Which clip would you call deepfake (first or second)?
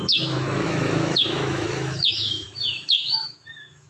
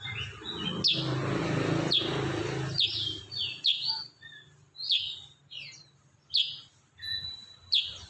first